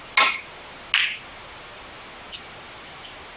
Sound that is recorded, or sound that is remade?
recorded